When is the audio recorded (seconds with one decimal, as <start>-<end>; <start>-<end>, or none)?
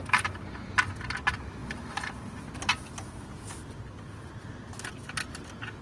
0.0-5.8